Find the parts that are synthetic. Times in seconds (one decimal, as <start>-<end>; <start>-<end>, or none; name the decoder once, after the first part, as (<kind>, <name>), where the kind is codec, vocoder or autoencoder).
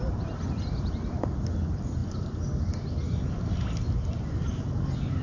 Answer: none